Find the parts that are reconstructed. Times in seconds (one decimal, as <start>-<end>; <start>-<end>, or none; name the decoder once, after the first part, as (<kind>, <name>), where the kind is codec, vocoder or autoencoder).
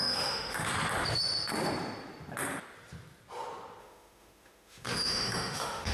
0.0-0.7 (autoencoder, DAC-VAE); 3.8-5.9